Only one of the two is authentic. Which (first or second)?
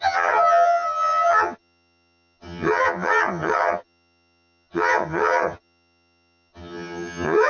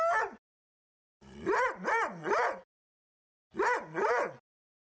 second